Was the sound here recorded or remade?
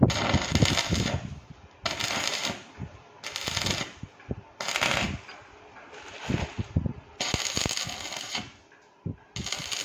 recorded